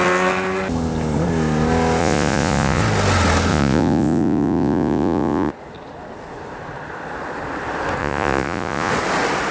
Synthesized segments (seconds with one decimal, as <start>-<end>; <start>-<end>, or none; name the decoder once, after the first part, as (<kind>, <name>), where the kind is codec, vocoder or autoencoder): 2.0-2.8 (vocoder, Vocos); 3.5-5.5; 8.0-8.9